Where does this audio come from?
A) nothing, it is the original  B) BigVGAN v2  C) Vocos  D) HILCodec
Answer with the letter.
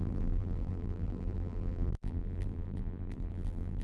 B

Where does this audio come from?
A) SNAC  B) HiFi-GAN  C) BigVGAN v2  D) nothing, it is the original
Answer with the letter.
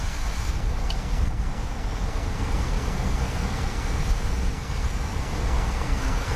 A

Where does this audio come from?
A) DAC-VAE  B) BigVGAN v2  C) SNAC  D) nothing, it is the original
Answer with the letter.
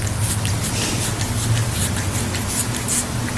D